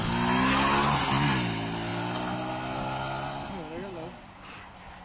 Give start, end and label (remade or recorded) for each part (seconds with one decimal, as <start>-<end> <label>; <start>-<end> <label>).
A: 0.0-5.0 recorded